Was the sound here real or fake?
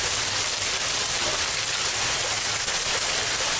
real